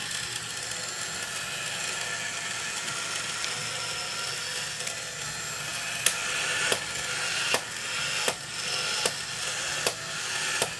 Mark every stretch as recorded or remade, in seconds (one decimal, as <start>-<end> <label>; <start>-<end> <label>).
0.0-10.8 recorded